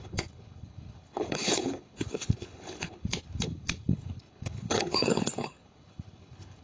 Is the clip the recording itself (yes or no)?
no